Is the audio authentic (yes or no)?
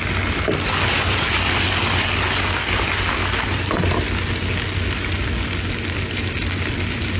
yes